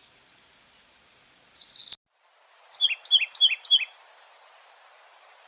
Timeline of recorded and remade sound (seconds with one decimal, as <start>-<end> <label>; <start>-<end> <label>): 0.0-1.8 remade; 1.8-5.1 recorded; 5.1-5.5 remade